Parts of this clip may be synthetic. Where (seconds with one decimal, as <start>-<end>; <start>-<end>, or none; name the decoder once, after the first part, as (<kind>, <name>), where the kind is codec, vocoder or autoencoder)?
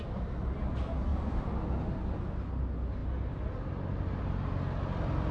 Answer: 1.1-1.6 (vocoder, BigVGAN v2)